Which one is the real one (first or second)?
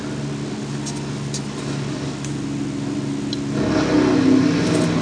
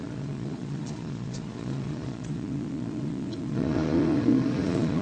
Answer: first